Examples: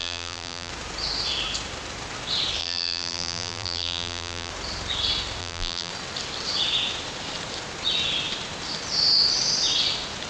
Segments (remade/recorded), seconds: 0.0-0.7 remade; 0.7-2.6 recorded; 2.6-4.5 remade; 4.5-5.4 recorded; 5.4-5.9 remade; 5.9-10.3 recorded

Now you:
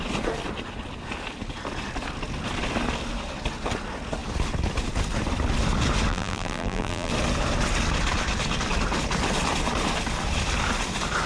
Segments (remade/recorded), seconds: 0.0-6.1 recorded; 6.1-7.1 remade; 7.1-11.3 recorded

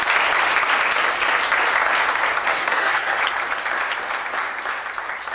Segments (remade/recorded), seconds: 0.0-2.5 recorded; 2.5-3.2 remade; 3.2-5.3 recorded

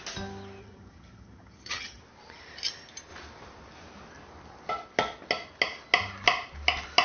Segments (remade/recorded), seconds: 0.0-0.6 recorded; 0.6-2.0 remade; 2.0-7.0 recorded